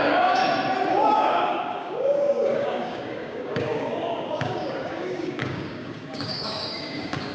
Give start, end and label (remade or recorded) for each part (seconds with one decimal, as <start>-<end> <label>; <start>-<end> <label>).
0.0-0.4 remade; 0.4-0.9 recorded; 0.9-7.3 remade